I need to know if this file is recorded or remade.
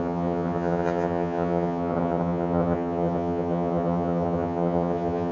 remade